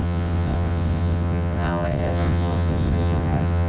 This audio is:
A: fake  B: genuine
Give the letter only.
A